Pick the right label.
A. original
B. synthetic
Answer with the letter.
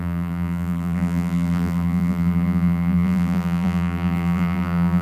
B